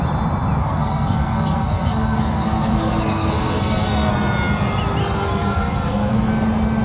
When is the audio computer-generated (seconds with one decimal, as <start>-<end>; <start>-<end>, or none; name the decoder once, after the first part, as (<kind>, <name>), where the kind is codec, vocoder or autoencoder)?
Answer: 0.6-4.1 (codec, SNAC); 5.0-6.3